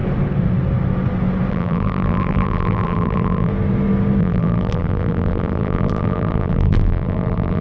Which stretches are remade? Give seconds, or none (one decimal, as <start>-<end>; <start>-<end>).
1.5-3.5; 4.2-7.6